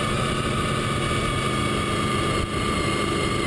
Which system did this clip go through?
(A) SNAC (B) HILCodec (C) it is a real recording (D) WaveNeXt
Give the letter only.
C